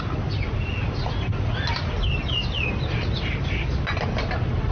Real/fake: real